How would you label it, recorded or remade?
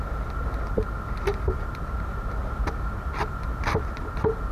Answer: recorded